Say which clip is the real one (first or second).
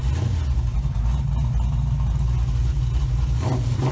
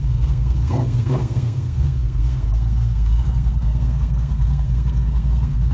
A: first